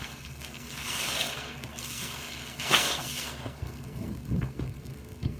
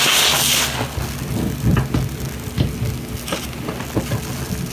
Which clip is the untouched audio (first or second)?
second